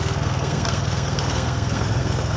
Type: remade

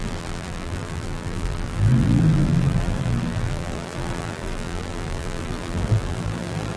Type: remade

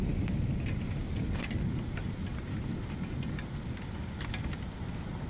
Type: recorded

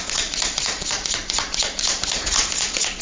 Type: remade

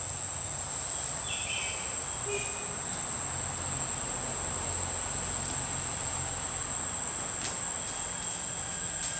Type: recorded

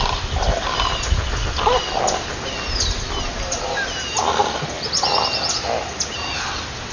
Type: recorded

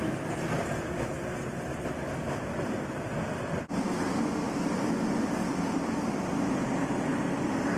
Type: recorded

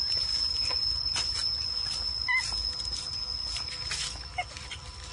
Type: recorded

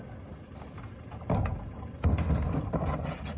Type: recorded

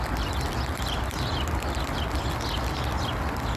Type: recorded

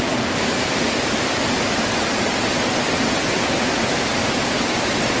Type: recorded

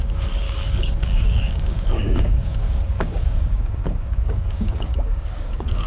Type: remade